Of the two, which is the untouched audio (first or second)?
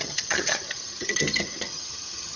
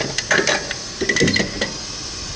second